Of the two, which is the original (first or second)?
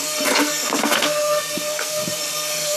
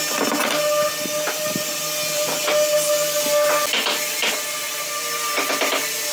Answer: second